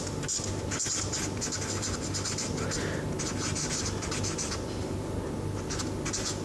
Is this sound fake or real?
real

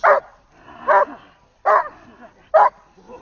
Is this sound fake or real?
real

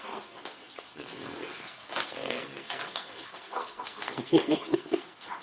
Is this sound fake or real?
fake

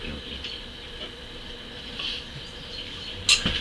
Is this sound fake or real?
real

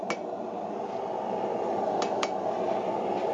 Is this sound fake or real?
real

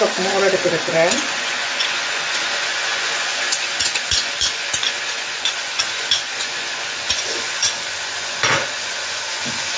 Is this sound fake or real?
fake